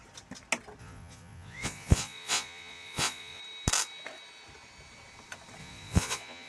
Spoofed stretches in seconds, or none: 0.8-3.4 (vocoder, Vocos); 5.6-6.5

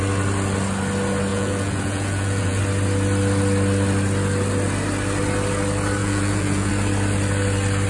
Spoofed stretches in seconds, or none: 1.3-2.6 (vocoder, Vocos); 6.0-6.7

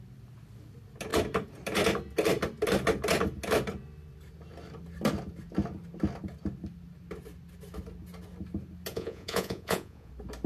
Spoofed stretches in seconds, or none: 8.9-10.1 (vocoder, Vocos)

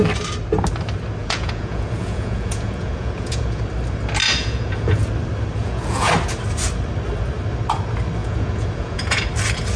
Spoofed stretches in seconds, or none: 1.2-3.6 (vocoder, Vocos); 4.2-5.1; 5.6-6.1; 8.2-9.2